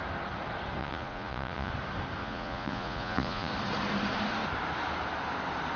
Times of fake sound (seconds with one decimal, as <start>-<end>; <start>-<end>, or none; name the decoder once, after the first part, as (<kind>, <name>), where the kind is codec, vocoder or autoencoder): 0.8-1.7 (vocoder, Vocos); 2.2-3.5